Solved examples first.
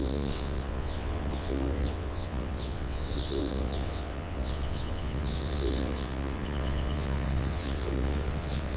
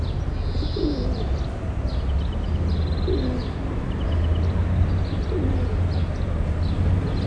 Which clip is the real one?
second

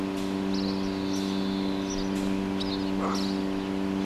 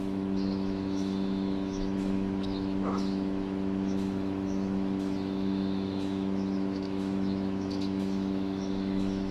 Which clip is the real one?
first